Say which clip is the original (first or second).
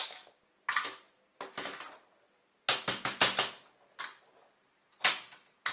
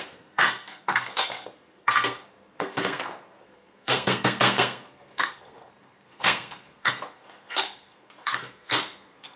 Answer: first